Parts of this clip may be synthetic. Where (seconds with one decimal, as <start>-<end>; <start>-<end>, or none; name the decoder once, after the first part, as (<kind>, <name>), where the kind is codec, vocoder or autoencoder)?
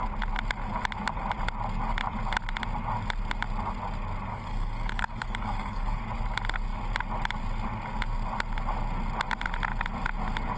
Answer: 4.3-6.0 (codec, DAC)